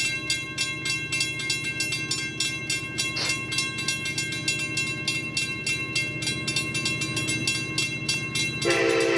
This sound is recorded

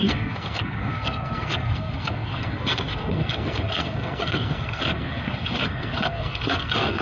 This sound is remade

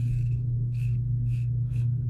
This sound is remade